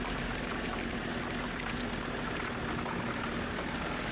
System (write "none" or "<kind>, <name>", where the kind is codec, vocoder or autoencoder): none